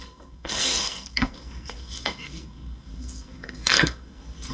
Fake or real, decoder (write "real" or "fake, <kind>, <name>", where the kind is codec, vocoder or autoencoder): fake, codec, SNAC